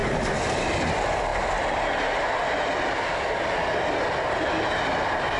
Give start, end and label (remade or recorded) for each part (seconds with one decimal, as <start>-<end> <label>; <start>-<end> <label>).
0.0-5.4 recorded